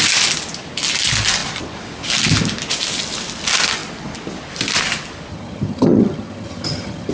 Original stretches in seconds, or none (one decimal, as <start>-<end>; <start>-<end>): 0.0-5.3